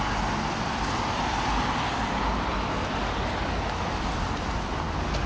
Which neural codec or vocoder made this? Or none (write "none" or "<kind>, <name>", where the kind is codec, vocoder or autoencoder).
none